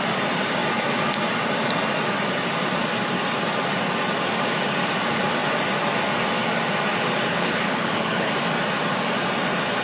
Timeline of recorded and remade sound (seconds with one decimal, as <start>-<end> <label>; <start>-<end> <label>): 0.0-7.3 recorded; 7.3-8.3 remade; 8.3-9.8 recorded